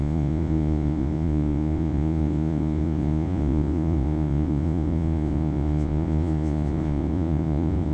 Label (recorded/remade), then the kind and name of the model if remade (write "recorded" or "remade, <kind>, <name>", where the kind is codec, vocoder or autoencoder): remade, vocoder, Vocos